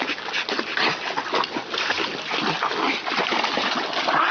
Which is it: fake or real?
real